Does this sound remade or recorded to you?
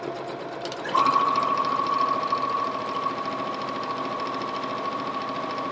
recorded